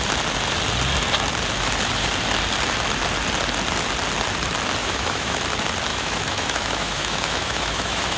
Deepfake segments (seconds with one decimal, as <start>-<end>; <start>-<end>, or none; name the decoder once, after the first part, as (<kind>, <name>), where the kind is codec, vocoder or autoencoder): 4.8-5.4 (autoencoder, DAC-VAE); 5.9-8.2